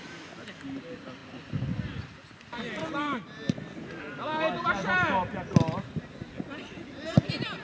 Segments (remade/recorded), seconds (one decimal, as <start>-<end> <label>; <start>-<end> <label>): 0.0-7.6 recorded